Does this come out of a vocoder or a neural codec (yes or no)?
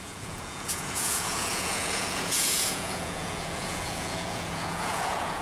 yes